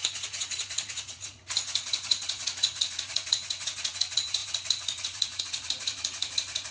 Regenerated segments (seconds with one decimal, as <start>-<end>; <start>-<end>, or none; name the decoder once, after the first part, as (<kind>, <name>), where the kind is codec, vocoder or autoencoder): 0.0-6.7 (vocoder, Vocos)